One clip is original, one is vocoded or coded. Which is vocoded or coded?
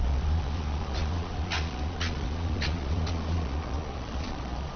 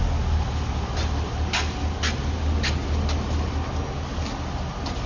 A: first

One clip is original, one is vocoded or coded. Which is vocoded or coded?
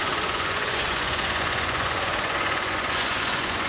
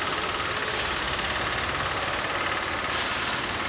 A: first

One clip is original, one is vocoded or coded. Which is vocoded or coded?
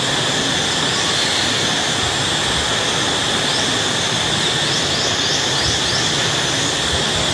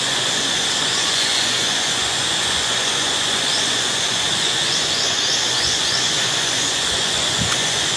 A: second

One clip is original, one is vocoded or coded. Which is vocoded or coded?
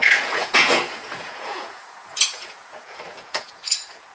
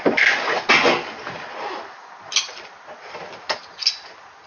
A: first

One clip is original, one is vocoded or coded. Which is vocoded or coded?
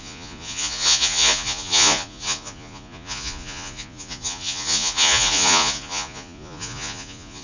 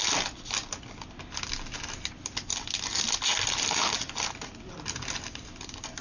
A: first